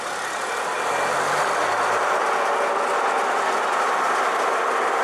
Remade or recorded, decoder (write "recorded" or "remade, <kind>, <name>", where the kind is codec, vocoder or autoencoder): recorded